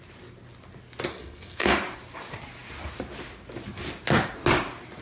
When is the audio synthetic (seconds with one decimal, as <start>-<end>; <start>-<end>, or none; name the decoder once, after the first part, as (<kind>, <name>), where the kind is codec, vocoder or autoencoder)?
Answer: 1.1-1.7 (codec, SNAC)